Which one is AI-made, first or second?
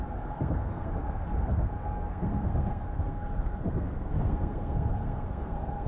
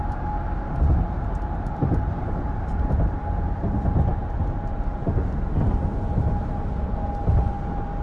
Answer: first